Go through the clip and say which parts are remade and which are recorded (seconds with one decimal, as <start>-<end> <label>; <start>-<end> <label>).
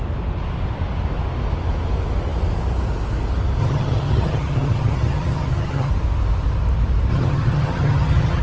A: 0.0-3.6 recorded; 3.6-5.9 remade; 5.9-7.1 recorded; 7.1-8.4 remade